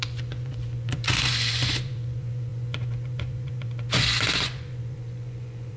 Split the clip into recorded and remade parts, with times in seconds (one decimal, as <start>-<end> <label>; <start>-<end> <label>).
0.0-5.8 remade